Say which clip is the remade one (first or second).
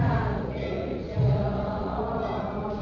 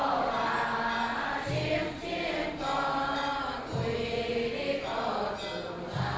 first